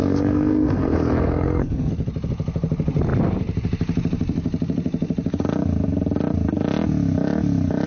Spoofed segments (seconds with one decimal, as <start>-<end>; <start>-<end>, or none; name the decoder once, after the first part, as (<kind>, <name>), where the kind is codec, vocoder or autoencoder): 0.0-1.9 (codec, SNAC)